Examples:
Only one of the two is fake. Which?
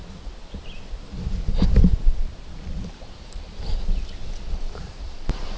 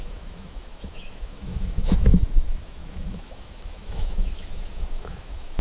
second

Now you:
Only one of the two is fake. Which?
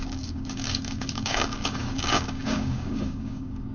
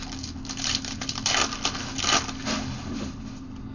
first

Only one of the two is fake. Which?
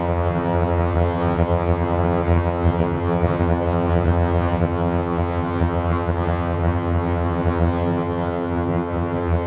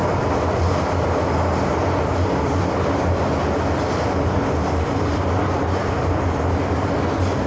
first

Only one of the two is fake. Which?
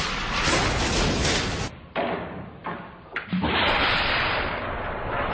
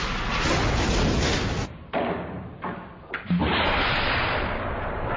first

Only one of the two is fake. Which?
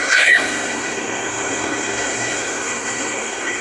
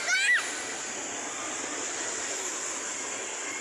first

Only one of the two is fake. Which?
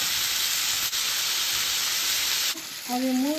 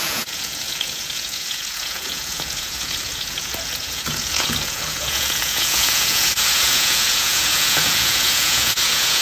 second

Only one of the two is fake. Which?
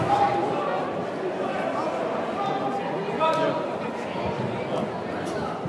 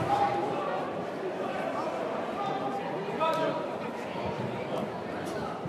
second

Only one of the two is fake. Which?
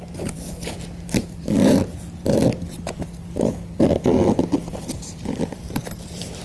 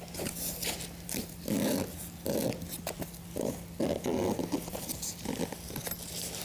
first